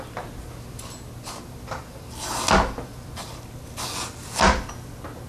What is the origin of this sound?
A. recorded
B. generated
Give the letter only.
A